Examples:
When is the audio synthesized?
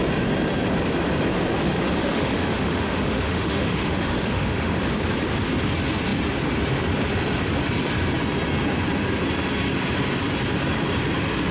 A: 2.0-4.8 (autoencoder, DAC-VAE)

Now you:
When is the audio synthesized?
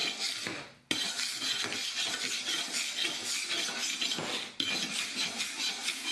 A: none